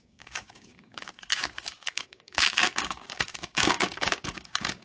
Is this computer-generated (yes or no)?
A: yes